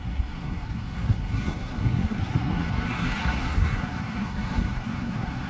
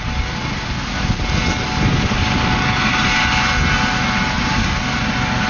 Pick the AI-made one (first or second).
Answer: first